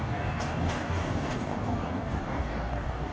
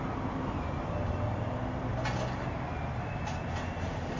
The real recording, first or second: second